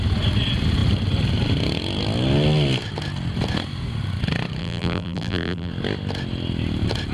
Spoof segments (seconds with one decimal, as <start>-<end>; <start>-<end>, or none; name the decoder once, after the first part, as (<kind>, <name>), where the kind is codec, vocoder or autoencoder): 4.6-5.7 (vocoder, BigVGAN v2)